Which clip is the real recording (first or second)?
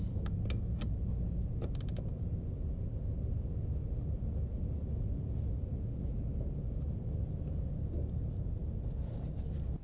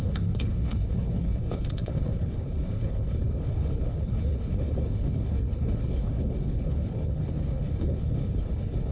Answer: first